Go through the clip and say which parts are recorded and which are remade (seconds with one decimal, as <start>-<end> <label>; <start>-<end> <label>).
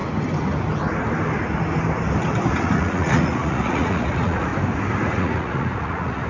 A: 0.0-2.6 recorded; 2.6-4.5 remade; 4.5-5.1 recorded; 5.1-6.3 remade